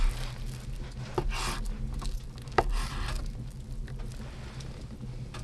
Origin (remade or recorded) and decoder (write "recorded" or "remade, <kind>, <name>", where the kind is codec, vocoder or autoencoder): recorded